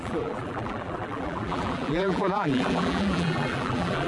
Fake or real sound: fake